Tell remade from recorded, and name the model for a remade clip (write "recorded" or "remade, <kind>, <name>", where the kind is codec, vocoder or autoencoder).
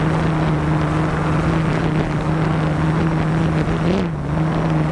recorded